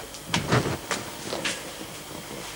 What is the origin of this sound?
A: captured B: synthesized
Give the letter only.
A